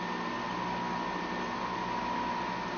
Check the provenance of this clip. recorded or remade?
recorded